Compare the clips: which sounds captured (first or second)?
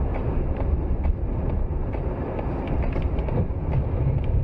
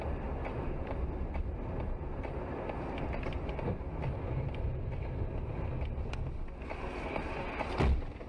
second